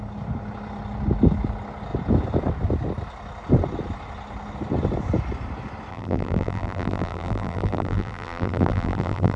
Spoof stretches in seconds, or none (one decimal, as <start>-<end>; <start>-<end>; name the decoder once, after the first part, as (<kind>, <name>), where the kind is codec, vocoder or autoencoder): 5.9-9.4 (vocoder, BigVGAN v2)

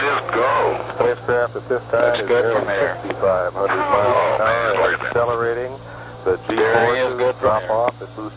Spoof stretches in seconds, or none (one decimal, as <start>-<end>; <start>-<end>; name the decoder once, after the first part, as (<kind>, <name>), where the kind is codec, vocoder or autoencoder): 0.5-4.4 (codec, DAC)